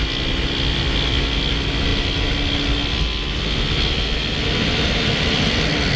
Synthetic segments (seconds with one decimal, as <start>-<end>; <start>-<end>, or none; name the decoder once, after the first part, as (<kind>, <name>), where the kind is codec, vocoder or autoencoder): none